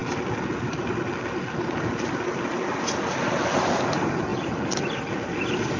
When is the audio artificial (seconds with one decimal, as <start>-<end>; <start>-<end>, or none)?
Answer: none